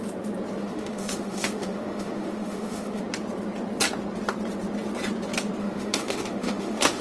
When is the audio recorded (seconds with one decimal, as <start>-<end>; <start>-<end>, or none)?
0.0-0.6; 3.0-5.6